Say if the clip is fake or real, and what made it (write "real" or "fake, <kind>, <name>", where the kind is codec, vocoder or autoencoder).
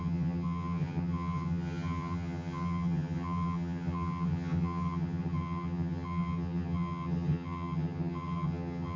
fake, vocoder, HiFi-GAN